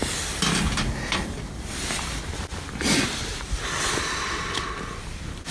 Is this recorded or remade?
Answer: recorded